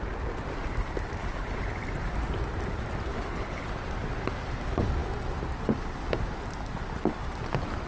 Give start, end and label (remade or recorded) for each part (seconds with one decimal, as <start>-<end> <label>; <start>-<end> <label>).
0.0-1.2 recorded; 1.2-1.7 remade; 1.7-3.1 recorded; 3.1-3.6 remade; 3.6-7.9 recorded